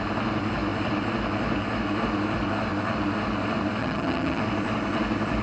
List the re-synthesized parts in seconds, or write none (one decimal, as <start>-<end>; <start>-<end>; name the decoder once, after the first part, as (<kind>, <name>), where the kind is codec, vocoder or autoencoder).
3.8-4.4 (vocoder, HiFi-GAN)